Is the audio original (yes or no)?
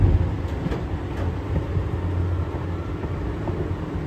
yes